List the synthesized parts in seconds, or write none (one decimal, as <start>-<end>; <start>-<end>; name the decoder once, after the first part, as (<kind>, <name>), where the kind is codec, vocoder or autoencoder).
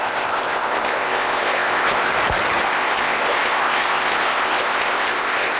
0.0-2.1 (codec, ZipCodec); 2.6-5.6